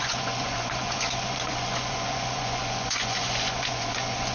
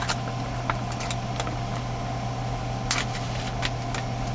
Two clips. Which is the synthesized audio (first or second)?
first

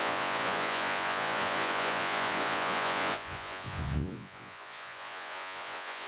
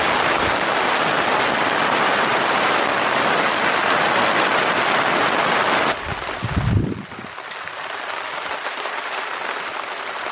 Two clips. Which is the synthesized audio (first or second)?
first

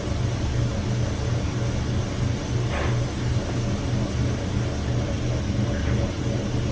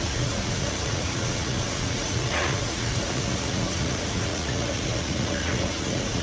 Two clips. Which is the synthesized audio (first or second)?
second